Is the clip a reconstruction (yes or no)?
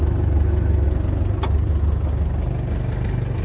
no